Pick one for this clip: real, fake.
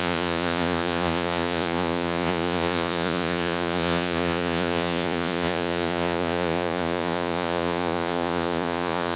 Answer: fake